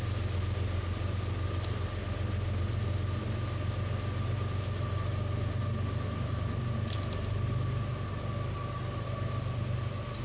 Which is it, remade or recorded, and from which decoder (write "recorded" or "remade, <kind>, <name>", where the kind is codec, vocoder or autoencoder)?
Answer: recorded